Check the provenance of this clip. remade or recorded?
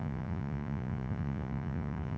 remade